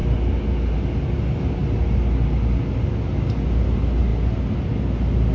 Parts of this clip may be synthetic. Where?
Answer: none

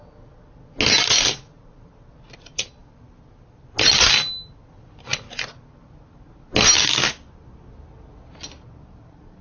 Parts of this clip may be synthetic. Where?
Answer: none

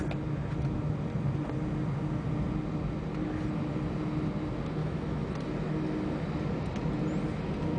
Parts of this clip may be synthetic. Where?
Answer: 4.8-5.3 (autoencoder, DAC-VAE)

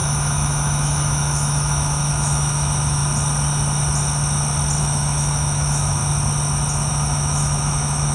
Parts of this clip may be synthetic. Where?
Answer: 0.0-3.0 (autoencoder, DAC-VAE); 4.8-6.0; 6.9-8.1